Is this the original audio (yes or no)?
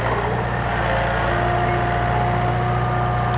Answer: yes